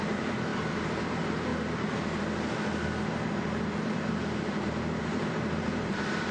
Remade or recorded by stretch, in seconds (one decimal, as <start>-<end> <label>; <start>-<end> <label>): 0.0-1.5 remade; 1.5-3.0 recorded; 3.0-6.3 remade